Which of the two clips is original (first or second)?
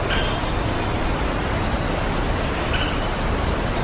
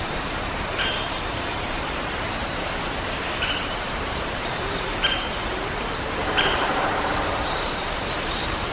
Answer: first